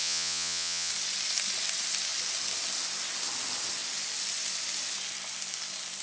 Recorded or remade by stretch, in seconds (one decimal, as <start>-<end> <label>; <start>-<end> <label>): 0.0-0.9 remade; 0.9-6.0 recorded